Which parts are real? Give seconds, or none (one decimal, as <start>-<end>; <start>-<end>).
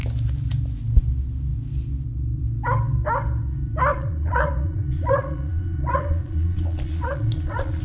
0.0-3.9